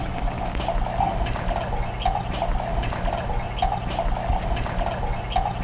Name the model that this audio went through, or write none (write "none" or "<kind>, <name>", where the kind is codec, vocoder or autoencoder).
none